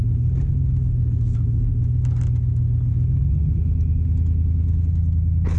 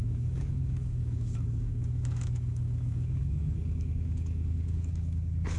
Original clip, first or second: first